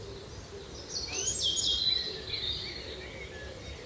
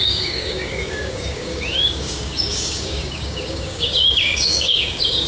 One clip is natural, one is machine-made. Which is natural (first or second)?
first